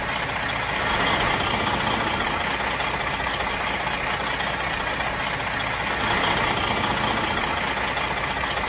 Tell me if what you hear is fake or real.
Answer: real